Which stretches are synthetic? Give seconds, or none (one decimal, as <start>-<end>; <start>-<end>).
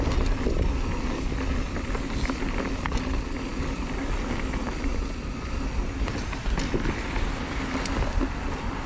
none